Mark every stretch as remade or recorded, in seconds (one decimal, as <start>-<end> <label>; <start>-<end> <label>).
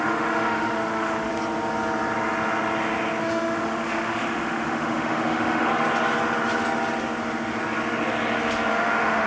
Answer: 0.0-1.3 remade; 1.3-3.2 recorded; 3.2-5.7 remade; 5.7-8.7 recorded; 8.7-9.3 remade